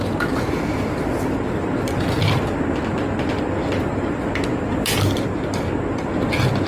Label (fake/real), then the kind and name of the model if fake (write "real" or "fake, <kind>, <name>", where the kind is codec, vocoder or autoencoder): real